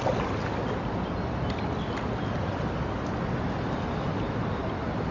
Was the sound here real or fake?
real